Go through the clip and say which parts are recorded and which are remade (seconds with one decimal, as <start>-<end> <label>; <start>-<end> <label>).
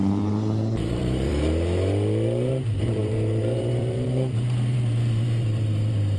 0.0-1.3 remade; 1.3-2.5 recorded; 2.5-6.2 remade